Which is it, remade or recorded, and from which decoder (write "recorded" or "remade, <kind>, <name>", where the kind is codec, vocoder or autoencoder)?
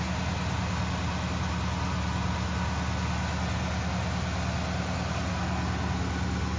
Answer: recorded